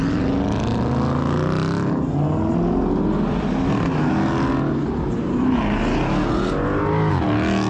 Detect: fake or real real